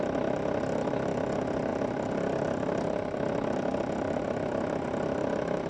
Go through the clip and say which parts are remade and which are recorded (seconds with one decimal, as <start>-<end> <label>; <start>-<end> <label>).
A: 0.0-5.7 recorded